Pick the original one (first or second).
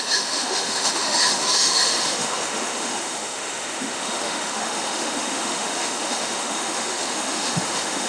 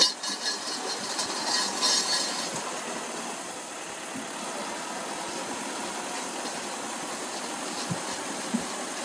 second